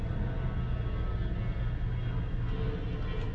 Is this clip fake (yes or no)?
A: no